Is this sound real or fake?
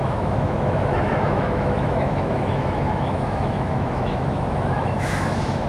fake